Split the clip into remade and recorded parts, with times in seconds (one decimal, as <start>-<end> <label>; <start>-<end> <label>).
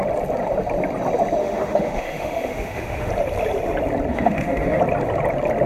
0.0-1.4 recorded; 1.4-3.1 remade; 3.1-4.1 recorded; 4.1-4.8 remade; 4.8-5.7 recorded